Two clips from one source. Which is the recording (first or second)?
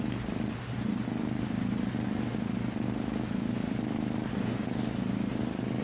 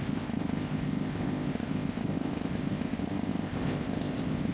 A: first